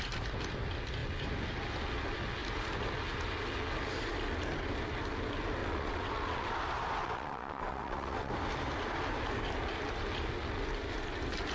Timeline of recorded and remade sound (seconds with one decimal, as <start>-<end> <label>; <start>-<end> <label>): 0.0-5.6 recorded; 5.6-6.5 remade; 6.5-7.0 recorded; 7.0-8.3 remade; 8.3-11.5 recorded